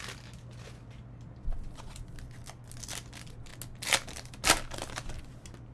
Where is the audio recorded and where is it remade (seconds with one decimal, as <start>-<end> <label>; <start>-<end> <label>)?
0.0-5.7 recorded